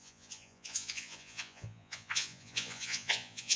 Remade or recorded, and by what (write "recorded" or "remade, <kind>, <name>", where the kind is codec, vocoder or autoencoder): remade, vocoder, Vocos